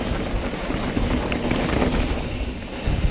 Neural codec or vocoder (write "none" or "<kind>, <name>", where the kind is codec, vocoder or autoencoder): none